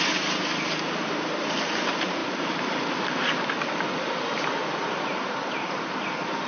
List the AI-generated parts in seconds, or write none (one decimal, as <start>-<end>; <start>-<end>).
0.0-2.2; 4.1-4.6; 5.2-6.5